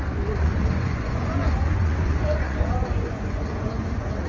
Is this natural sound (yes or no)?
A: no